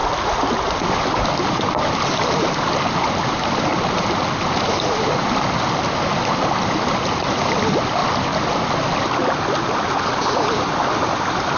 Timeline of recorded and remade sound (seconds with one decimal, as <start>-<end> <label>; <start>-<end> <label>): 0.0-11.6 recorded